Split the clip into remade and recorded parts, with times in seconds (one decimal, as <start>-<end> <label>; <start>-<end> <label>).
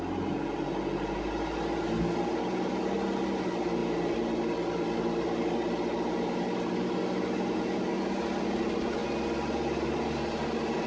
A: 0.0-10.9 recorded